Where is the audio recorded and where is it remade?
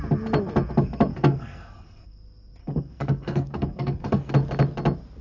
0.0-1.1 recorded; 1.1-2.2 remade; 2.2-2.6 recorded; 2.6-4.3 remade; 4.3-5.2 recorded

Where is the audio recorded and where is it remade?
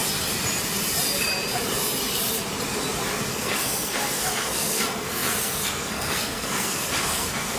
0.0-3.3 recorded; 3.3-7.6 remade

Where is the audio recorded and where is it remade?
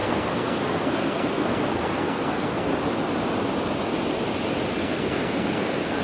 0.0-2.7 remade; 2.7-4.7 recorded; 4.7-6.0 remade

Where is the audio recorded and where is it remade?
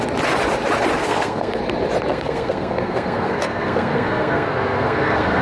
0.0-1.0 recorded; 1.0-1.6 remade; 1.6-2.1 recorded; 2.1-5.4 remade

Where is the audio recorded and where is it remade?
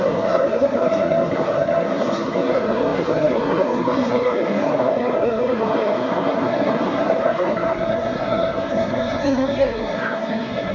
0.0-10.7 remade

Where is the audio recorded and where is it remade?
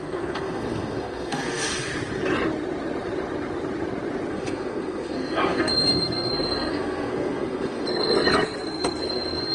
0.0-1.9 remade; 1.9-4.3 recorded; 4.3-9.5 remade